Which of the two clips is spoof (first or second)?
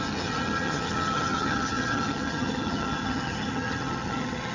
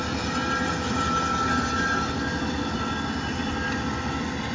first